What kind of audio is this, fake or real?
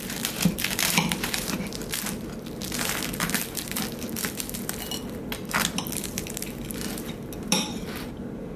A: fake